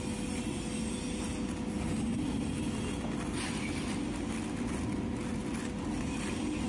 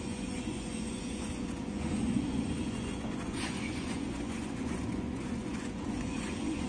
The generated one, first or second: second